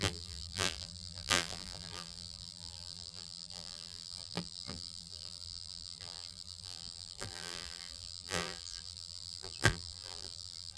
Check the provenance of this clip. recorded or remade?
remade